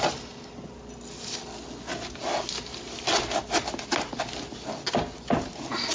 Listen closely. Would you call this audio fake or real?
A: real